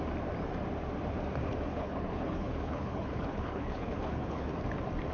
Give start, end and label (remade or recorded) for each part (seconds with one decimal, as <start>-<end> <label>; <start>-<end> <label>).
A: 0.0-1.7 recorded; 1.7-4.5 remade; 4.5-5.1 recorded

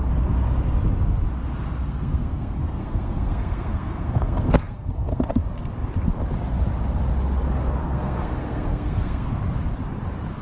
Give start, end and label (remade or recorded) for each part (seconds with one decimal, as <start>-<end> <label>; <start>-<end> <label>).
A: 0.0-1.8 recorded; 1.8-5.3 remade; 5.3-7.8 recorded; 7.8-9.4 remade; 9.4-10.4 recorded

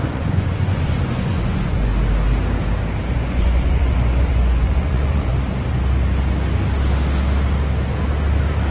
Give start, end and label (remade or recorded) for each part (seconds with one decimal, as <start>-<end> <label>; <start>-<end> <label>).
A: 0.0-1.9 remade; 1.9-3.1 recorded; 3.1-5.3 remade; 5.3-8.7 recorded

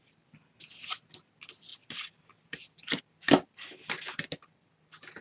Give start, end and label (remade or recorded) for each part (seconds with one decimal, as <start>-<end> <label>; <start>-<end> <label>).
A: 0.0-5.2 recorded